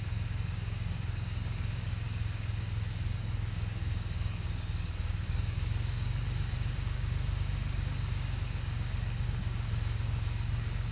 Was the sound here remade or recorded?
remade